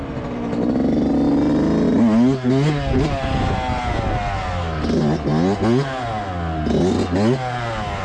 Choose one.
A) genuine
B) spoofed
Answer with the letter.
A